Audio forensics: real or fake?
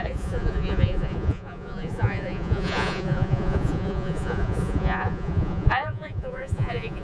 fake